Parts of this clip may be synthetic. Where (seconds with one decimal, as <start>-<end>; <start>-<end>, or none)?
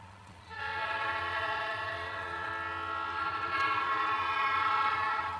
0.0-2.5; 3.1-5.4